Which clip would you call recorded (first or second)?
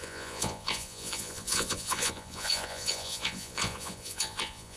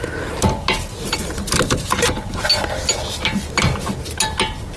second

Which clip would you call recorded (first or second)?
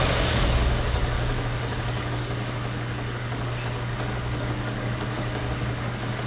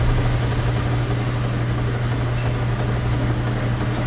second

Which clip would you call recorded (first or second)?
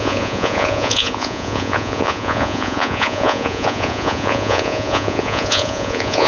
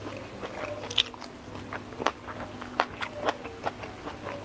second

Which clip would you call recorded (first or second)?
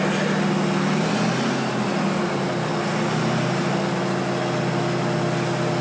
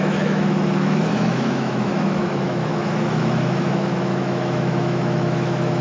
first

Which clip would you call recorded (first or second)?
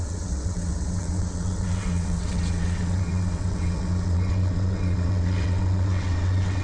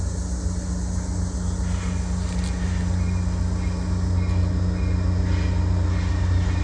second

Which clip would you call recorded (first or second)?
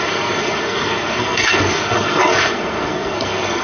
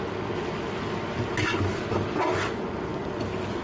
second